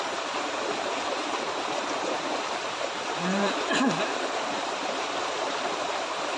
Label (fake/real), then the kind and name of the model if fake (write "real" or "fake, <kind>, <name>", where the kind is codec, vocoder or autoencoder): fake, vocoder, BigVGAN v2